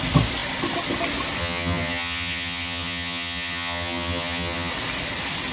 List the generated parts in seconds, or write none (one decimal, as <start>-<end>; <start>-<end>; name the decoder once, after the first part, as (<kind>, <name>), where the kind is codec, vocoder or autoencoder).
1.4-4.7 (vocoder, HiFi-GAN)